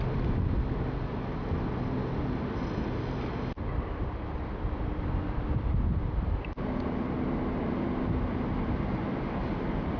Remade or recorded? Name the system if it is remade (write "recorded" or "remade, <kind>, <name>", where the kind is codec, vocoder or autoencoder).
recorded